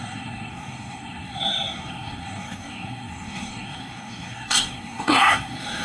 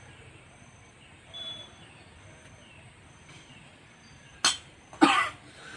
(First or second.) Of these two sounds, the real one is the second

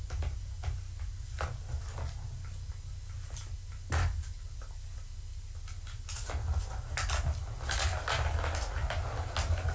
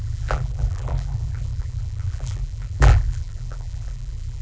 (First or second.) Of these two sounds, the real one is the first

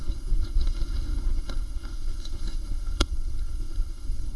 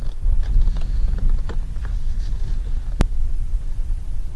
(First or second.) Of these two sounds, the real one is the second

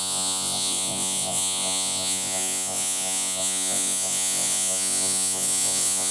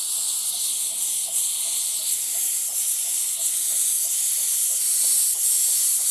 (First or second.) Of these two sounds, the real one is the second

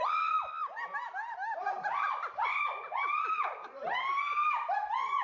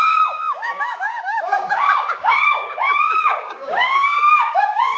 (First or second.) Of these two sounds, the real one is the first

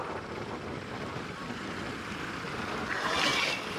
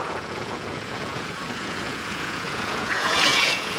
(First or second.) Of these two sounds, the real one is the first